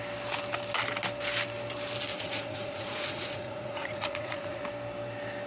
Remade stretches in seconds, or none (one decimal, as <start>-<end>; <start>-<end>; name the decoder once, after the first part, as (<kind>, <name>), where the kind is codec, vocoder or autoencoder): 2.1-4.6 (vocoder, Vocos)